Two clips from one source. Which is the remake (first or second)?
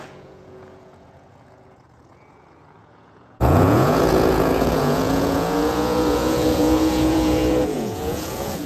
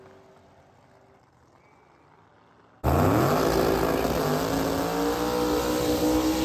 first